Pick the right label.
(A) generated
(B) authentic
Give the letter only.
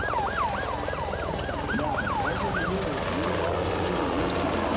B